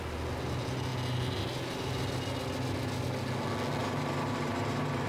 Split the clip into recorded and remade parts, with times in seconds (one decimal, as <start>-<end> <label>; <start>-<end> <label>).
0.0-3.8 recorded; 3.8-5.1 remade